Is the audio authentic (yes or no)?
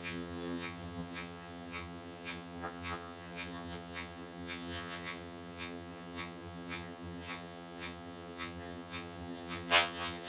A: no